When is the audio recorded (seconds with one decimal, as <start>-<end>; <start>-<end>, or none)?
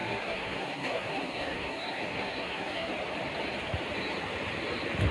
2.9-5.1